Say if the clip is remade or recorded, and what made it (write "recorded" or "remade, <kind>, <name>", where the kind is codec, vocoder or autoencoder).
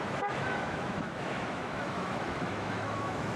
remade, autoencoder, DAC-VAE